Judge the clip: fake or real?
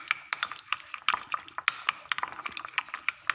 real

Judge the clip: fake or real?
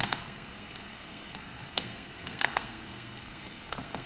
fake